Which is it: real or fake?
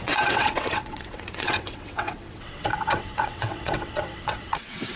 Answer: fake